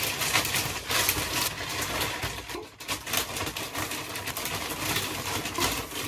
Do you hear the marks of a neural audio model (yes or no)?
no